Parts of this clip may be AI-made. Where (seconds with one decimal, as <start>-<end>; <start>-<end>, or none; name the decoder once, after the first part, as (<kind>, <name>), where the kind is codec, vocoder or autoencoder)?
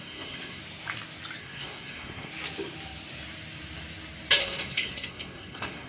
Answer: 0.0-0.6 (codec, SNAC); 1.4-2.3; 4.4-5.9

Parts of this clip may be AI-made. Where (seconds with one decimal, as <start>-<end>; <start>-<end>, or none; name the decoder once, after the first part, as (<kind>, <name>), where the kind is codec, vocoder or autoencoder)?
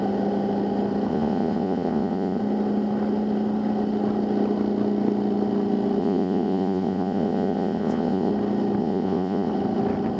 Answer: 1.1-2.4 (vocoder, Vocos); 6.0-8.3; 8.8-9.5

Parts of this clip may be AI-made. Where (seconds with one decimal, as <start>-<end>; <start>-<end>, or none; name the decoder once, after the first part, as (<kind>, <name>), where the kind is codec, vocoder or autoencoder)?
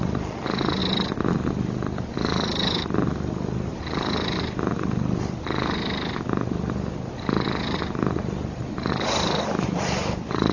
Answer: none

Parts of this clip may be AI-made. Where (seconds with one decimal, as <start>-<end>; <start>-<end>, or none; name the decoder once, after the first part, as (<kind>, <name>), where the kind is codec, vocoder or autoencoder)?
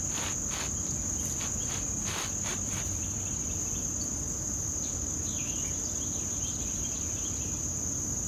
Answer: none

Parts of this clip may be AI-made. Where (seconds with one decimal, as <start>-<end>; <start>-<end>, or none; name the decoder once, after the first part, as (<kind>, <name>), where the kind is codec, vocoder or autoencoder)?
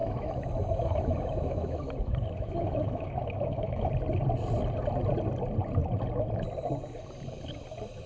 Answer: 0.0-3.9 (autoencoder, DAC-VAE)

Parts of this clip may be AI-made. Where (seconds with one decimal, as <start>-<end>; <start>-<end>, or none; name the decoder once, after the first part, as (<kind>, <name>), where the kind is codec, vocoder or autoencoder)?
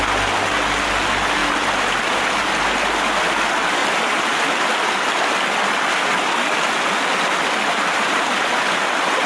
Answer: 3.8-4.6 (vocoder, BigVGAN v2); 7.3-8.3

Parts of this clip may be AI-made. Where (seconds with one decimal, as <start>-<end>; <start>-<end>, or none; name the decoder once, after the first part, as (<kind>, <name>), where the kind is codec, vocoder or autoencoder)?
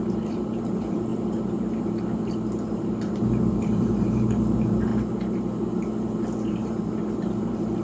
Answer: 0.0-4.9 (vocoder, BigVGAN v2); 6.5-7.8